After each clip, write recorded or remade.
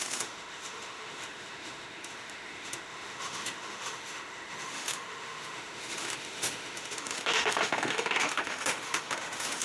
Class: remade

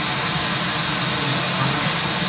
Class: recorded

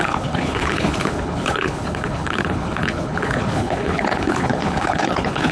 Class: remade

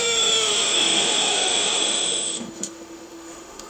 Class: remade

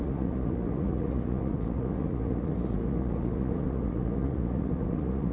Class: remade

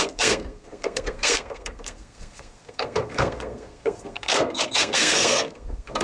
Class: remade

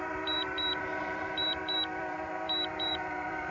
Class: remade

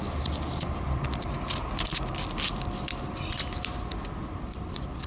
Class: recorded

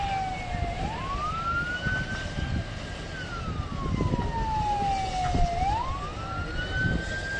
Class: recorded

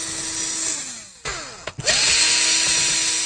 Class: recorded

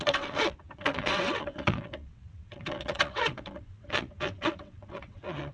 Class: remade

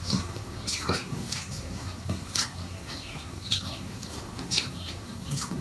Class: remade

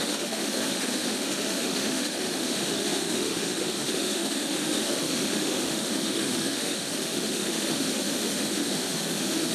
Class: remade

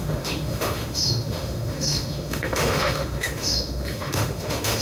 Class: remade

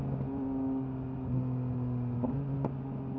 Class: recorded